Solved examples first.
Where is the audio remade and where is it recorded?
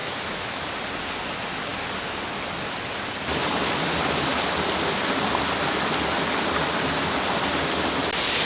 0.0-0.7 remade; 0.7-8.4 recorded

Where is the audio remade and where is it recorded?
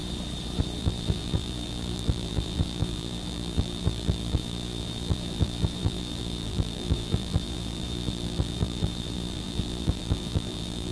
0.0-0.8 recorded; 0.8-10.9 remade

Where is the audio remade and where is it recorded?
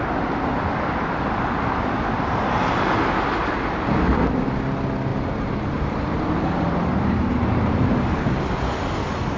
0.0-5.1 recorded; 5.1-7.2 remade; 7.2-9.4 recorded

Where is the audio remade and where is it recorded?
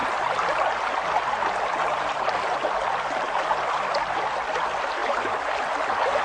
0.0-6.2 recorded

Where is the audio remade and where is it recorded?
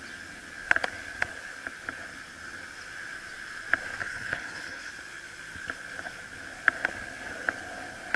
0.0-4.0 recorded; 4.0-4.9 remade; 4.9-8.2 recorded